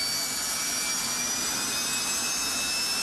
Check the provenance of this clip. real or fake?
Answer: real